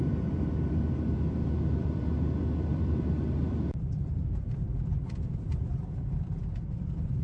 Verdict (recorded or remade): remade